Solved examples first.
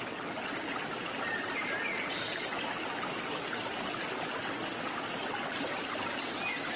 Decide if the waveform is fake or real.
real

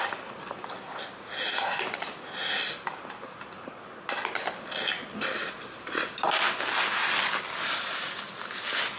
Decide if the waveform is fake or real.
real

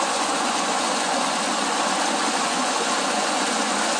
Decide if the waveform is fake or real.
fake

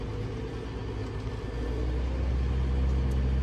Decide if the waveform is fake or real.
real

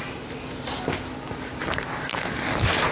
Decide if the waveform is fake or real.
real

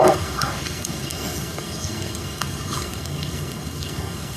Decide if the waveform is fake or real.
fake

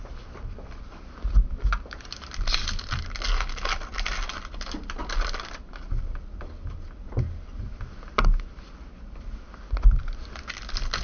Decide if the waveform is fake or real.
real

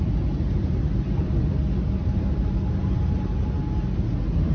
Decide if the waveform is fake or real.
real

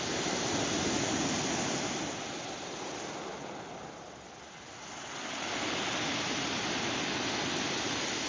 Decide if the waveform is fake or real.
real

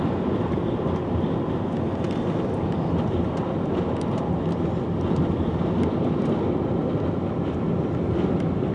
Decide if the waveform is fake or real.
real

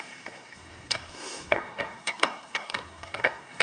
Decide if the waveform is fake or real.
fake